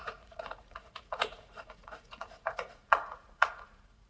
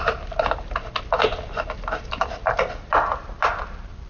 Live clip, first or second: second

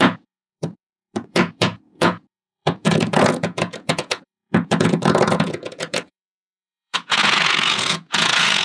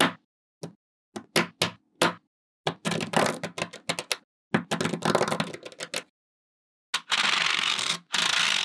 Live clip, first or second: second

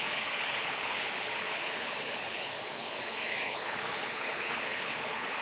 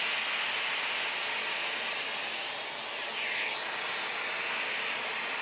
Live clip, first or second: second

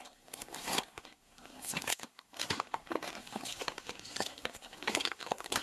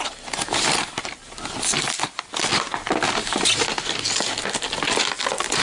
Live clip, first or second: second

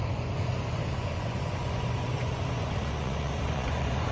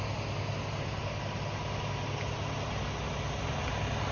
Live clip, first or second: second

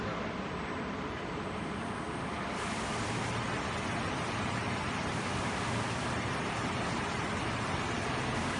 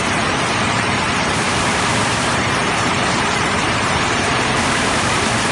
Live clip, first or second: first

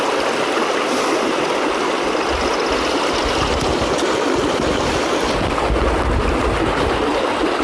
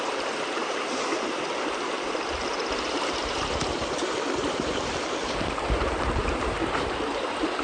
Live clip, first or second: first